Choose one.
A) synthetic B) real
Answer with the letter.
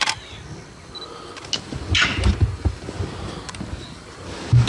B